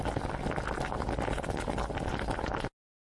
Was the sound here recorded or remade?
recorded